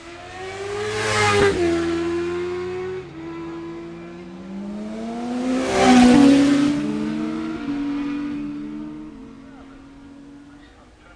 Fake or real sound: real